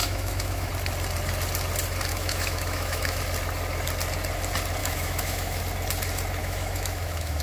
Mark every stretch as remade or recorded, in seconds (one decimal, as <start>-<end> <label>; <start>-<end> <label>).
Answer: 0.0-0.7 remade; 0.7-2.1 recorded; 2.1-3.2 remade; 3.2-4.8 recorded; 4.8-5.6 remade; 5.6-6.4 recorded; 6.4-7.4 remade